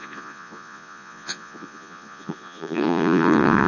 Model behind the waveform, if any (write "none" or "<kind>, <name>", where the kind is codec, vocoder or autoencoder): vocoder, Vocos